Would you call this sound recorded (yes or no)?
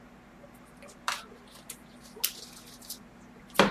yes